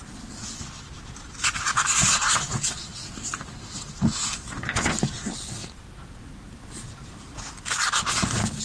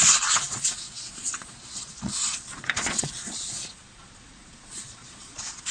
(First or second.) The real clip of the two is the first